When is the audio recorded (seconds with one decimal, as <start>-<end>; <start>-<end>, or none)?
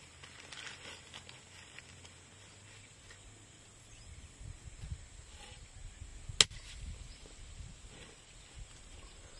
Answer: 0.0-9.4